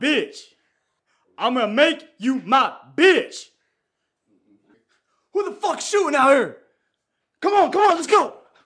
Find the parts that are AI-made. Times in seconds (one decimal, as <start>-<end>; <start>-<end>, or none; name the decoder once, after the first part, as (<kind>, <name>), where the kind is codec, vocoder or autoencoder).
7.8-8.6 (codec, HILCodec)